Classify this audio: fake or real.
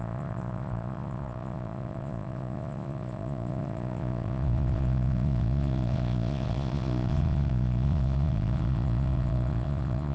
fake